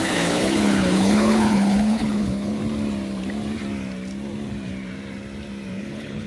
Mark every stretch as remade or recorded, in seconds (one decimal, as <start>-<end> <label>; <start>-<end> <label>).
0.0-2.6 remade; 2.6-5.8 recorded; 5.8-6.3 remade